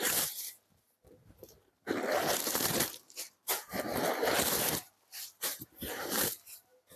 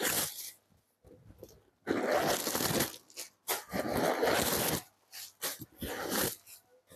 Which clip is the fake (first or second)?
first